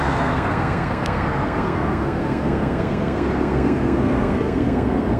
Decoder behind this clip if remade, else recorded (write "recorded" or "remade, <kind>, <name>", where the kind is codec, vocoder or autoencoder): remade, codec, SNAC